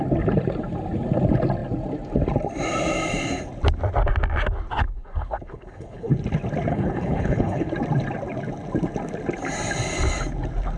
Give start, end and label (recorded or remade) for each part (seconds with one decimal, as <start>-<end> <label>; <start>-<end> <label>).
0.0-4.8 recorded; 4.8-6.1 remade; 6.1-6.7 recorded; 6.7-7.7 remade; 7.7-10.8 recorded